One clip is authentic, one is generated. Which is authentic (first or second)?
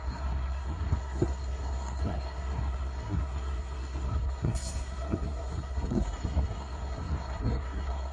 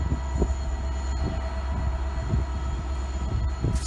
second